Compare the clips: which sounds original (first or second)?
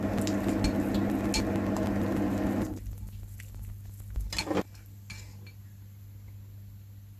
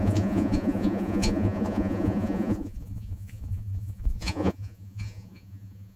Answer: first